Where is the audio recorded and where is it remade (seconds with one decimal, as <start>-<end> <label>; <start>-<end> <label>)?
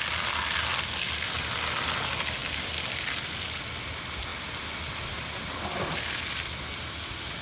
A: 0.0-2.4 recorded; 2.4-3.7 remade; 3.7-7.4 recorded